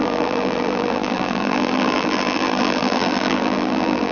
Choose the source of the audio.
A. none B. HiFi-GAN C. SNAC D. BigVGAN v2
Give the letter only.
D